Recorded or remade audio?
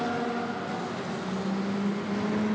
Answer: recorded